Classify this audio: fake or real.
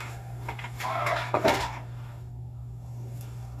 fake